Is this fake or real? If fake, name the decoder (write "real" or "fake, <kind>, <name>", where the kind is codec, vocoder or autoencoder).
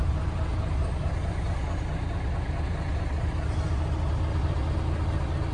real